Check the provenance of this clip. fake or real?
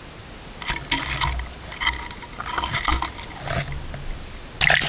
real